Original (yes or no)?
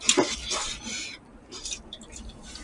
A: no